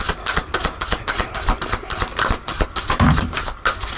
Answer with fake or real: real